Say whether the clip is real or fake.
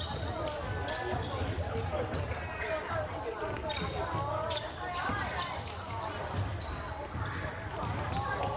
real